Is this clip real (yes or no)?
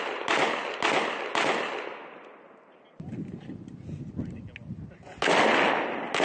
yes